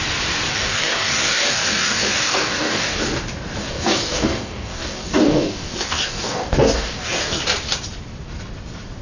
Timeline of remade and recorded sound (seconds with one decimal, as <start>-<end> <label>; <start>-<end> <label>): 0.0-0.5 recorded; 0.5-3.0 remade; 3.0-3.6 recorded; 3.6-7.4 remade; 7.4-9.0 recorded